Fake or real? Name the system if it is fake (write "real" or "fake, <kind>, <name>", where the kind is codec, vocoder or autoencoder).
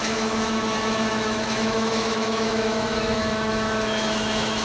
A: fake, autoencoder, DAC-VAE